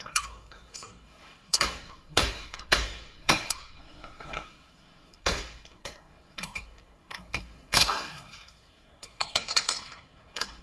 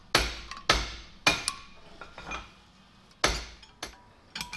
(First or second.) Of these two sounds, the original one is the second